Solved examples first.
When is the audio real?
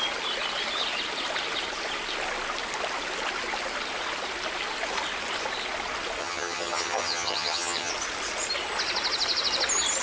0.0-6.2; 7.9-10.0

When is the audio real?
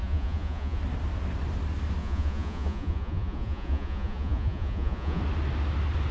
0.8-2.0; 5.2-6.1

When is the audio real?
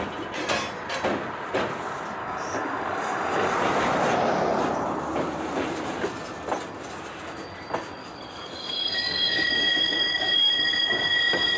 0.0-2.2; 3.5-8.0; 11.2-11.6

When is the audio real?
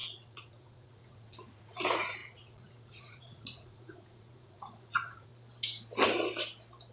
5.3-6.9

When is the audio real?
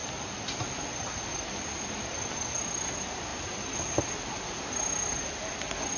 0.0-6.0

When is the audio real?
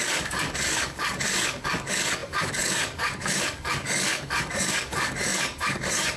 none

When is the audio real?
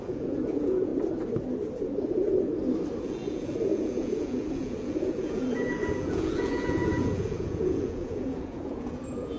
0.9-3.0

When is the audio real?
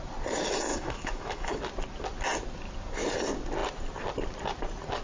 0.0-0.7; 1.6-5.0